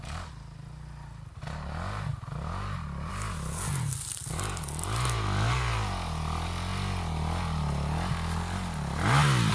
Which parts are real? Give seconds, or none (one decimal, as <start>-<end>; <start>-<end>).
0.0-9.5

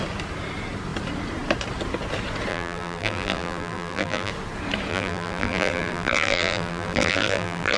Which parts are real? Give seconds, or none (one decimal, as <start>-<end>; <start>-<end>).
0.0-2.5; 4.3-4.9

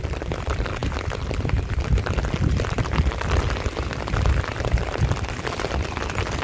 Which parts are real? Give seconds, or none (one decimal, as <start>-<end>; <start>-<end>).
0.0-6.4

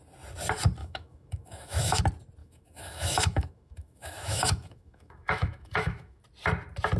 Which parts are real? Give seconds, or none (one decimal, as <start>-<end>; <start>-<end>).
0.0-0.8; 2.0-2.4; 6.2-7.0

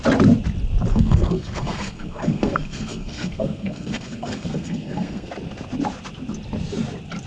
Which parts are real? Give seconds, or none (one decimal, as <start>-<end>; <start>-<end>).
0.0-0.9; 5.3-7.3

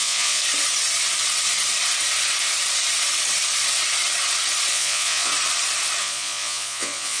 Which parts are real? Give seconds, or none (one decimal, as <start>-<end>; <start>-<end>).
0.4-4.7; 5.3-6.0

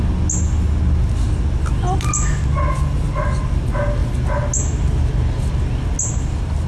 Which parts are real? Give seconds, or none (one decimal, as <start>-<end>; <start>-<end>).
0.0-6.7